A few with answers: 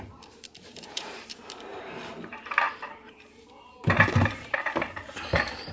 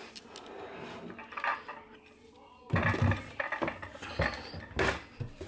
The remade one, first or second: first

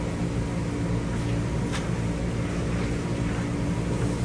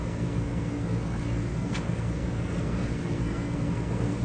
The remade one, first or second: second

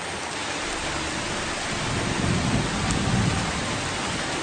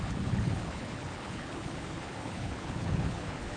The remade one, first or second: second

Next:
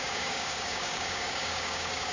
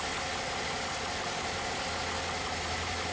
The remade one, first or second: first